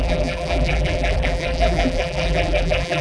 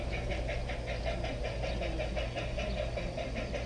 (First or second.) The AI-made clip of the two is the first